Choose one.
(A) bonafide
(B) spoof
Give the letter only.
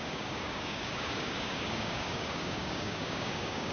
B